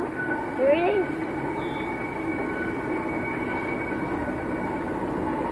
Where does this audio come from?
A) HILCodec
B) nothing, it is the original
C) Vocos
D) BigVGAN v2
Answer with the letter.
B